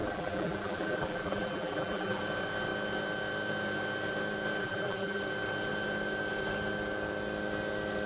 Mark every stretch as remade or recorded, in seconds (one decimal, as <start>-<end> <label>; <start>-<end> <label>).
0.0-2.2 remade; 2.2-4.6 recorded; 4.6-5.2 remade; 5.2-8.1 recorded

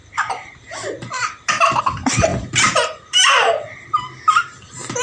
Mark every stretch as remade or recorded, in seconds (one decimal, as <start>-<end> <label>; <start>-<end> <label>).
0.0-5.0 recorded

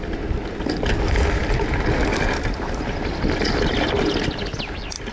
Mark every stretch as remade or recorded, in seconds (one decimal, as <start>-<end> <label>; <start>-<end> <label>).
0.0-5.1 recorded

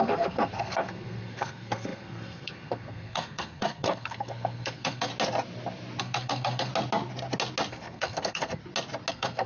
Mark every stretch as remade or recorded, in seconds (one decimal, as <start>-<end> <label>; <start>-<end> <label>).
0.0-5.1 remade; 5.1-6.0 recorded; 6.0-6.7 remade; 6.7-7.7 recorded; 7.7-8.6 remade; 8.6-9.1 recorded; 9.1-9.5 remade

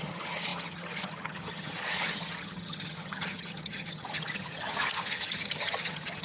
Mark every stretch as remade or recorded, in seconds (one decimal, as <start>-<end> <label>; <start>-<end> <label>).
0.0-6.2 remade